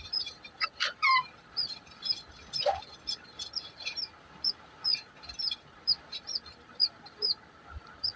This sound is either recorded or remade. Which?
remade